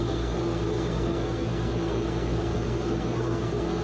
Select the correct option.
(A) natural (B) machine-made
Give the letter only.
B